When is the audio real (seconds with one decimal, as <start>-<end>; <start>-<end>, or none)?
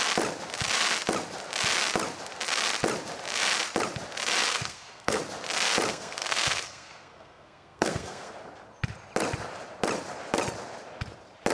0.0-4.5; 5.2-5.9; 8.3-11.5